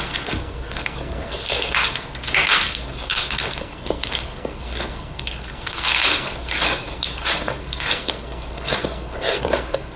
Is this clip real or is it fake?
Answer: fake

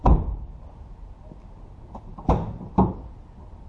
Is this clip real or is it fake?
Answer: real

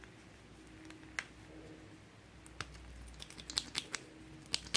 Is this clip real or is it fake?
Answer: real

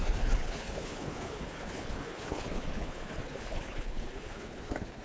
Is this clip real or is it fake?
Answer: fake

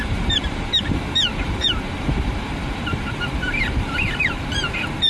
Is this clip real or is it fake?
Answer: fake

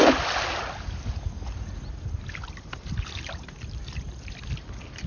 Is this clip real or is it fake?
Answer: real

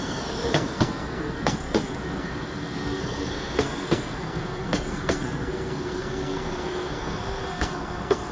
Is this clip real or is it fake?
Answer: fake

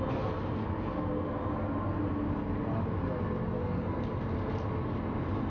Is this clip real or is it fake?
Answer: real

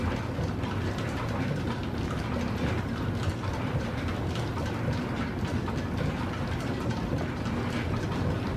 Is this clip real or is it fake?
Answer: real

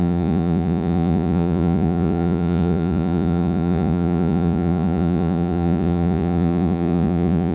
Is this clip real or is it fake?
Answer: fake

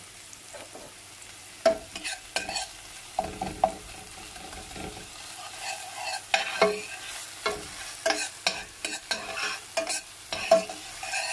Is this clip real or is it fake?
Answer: real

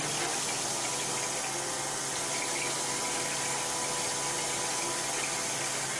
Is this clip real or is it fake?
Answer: real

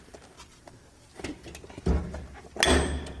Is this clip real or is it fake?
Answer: real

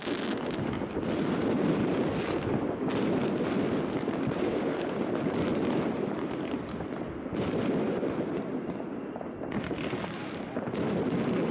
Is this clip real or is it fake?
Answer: real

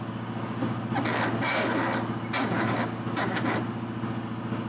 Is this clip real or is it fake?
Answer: real